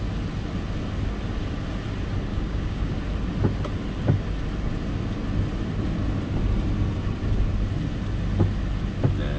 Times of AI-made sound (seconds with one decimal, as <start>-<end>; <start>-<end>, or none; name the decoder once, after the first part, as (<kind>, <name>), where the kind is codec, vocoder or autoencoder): 2.3-2.9 (codec, DAC)